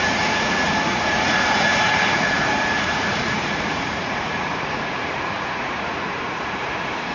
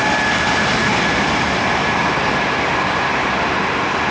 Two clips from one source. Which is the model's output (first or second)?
first